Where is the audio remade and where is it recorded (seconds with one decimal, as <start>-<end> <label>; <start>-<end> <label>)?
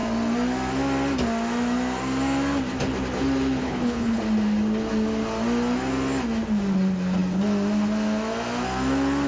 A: 0.0-3.6 recorded; 3.6-4.2 remade; 4.2-9.3 recorded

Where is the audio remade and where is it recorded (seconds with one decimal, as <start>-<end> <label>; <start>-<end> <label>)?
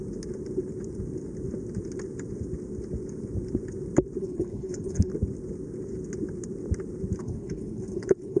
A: 0.0-4.2 recorded; 4.2-5.1 remade; 5.1-7.2 recorded; 7.2-8.4 remade